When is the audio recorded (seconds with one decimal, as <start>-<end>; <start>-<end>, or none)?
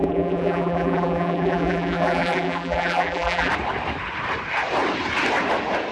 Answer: 3.5-5.9